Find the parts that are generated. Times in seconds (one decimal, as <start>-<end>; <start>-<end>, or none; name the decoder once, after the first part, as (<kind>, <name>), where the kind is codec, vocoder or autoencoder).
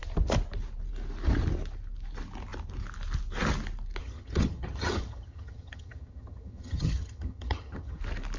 4.0-8.0 (vocoder, HiFi-GAN)